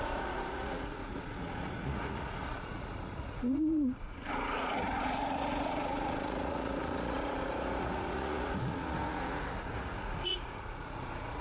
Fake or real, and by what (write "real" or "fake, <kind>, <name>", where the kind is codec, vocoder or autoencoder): fake, vocoder, Vocos